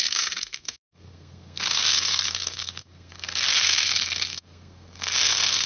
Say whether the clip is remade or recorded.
remade